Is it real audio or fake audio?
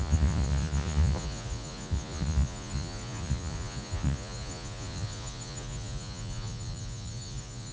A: fake